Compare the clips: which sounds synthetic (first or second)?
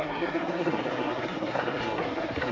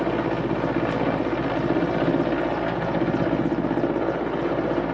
first